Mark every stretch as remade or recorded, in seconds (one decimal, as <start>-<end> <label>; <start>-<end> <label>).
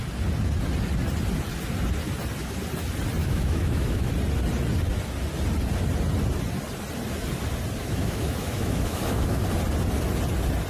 0.0-3.2 recorded; 3.2-4.1 remade; 4.1-7.8 recorded; 7.8-9.4 remade; 9.4-10.7 recorded